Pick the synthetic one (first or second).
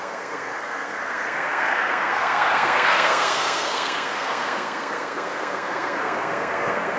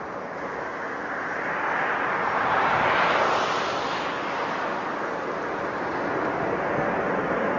first